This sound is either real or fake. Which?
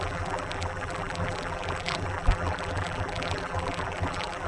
fake